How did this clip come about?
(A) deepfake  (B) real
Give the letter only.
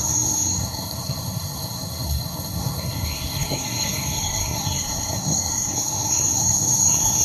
A